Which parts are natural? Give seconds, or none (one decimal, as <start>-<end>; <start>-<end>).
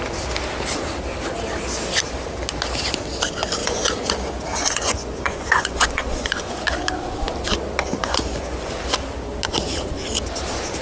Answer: 0.0-3.6; 4.1-4.5; 6.6-8.0; 8.7-10.8